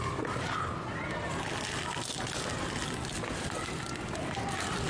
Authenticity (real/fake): real